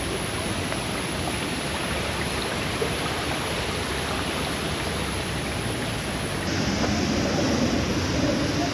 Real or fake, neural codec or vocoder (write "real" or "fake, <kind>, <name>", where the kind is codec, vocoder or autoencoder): real